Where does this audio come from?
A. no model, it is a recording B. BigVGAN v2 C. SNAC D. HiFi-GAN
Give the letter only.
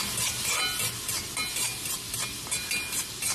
A